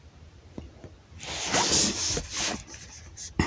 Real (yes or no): yes